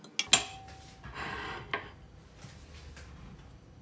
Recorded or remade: recorded